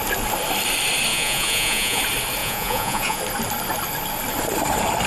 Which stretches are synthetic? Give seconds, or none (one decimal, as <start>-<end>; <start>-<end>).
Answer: 1.1-2.0; 2.4-3.2